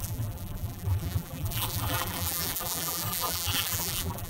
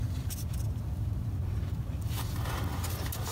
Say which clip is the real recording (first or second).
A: second